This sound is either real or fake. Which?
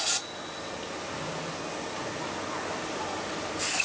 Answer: real